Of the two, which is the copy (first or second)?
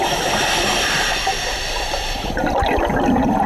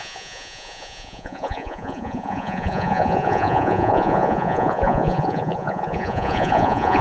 second